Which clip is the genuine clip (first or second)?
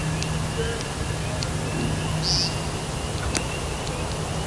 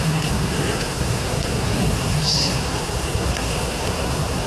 first